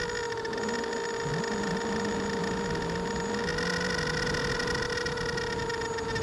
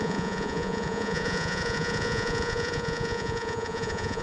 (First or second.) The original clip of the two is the first